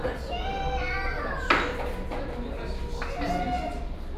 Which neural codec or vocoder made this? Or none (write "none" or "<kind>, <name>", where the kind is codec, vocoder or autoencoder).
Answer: none